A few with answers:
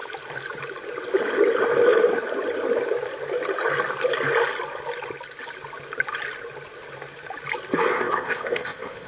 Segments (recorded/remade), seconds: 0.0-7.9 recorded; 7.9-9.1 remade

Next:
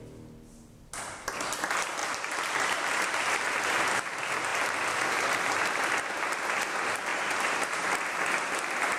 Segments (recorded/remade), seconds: 0.0-2.0 recorded; 2.0-3.6 remade; 3.6-7.1 recorded; 7.1-8.2 remade; 8.2-9.0 recorded

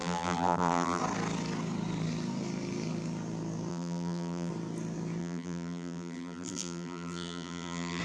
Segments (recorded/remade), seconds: 0.0-1.0 remade; 1.0-3.7 recorded; 3.7-4.5 remade; 4.5-5.2 recorded; 5.2-8.0 remade

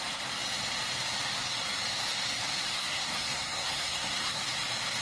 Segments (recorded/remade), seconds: 0.0-2.7 recorded; 2.7-4.4 remade; 4.4-5.0 recorded

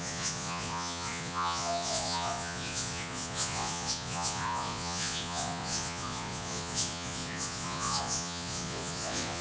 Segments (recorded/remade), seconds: 0.0-9.4 remade

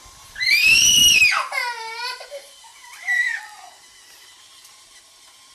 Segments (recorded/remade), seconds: 0.0-1.0 remade; 1.0-1.8 recorded; 1.8-5.5 remade

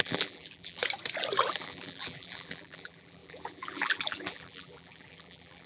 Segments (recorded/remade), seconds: 0.0-0.8 remade; 0.8-1.5 recorded; 1.5-5.7 remade

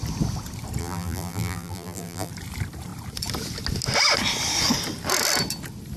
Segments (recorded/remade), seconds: 0.0-0.8 recorded; 0.8-2.3 remade; 2.3-6.0 recorded